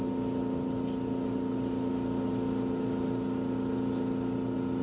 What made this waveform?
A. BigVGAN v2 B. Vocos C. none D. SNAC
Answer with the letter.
C